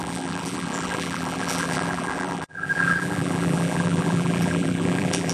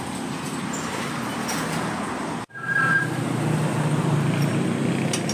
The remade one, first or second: first